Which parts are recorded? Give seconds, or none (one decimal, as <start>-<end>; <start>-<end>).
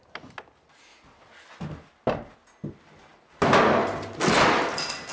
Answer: 0.0-5.1